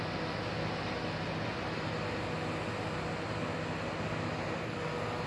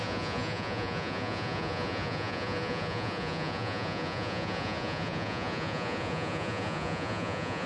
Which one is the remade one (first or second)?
second